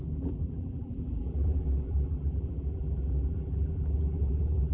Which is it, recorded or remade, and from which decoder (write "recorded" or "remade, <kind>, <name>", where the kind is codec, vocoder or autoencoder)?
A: remade, vocoder, BigVGAN v2